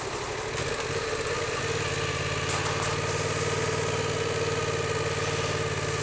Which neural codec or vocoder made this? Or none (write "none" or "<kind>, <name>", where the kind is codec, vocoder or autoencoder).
none